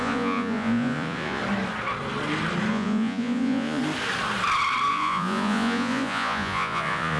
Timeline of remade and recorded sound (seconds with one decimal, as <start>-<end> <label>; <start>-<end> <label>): 0.0-1.4 remade; 1.4-2.7 recorded; 2.7-3.8 remade; 3.8-4.9 recorded; 4.9-7.2 remade